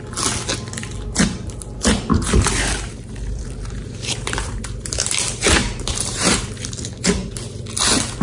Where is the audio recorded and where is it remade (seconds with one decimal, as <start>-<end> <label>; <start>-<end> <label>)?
0.0-2.1 recorded; 2.1-4.6 remade; 4.6-5.6 recorded; 5.6-6.5 remade; 6.5-8.2 recorded